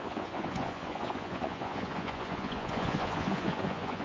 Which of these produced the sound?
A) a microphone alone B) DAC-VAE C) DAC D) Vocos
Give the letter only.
D